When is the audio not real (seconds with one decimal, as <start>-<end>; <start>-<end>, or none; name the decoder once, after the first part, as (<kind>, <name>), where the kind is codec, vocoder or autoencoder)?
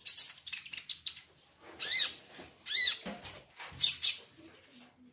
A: none